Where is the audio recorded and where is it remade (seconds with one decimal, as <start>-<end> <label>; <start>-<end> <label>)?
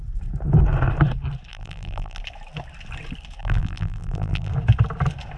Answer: 0.0-1.5 recorded; 1.5-2.2 remade; 2.2-3.4 recorded; 3.4-4.5 remade; 4.5-5.4 recorded